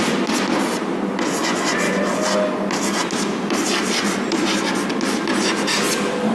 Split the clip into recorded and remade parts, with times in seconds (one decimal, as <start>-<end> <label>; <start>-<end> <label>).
0.0-1.4 recorded; 1.4-2.1 remade; 2.1-6.3 recorded